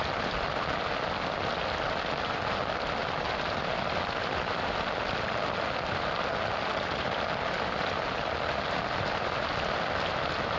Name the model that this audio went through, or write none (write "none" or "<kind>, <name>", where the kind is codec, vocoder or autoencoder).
none